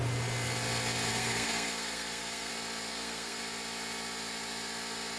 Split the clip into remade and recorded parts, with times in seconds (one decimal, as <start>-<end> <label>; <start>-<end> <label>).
0.0-1.1 recorded; 1.1-2.5 remade; 2.5-2.9 recorded; 2.9-3.4 remade; 3.4-5.2 recorded